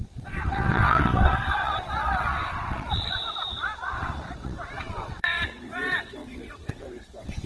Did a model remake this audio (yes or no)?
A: yes